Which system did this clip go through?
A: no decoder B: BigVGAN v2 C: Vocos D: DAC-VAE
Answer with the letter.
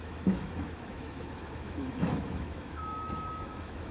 D